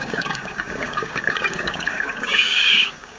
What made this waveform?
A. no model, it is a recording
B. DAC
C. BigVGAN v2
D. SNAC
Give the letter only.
B